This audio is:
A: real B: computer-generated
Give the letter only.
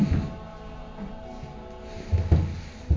A